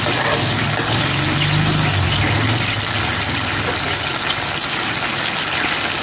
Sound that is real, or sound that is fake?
real